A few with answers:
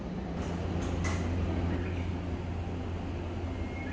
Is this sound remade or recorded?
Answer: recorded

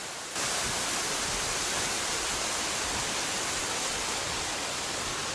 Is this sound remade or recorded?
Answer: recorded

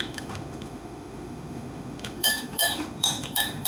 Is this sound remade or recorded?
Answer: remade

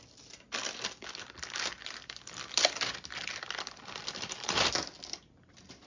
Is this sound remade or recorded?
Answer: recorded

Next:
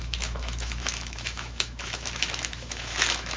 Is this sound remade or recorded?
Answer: remade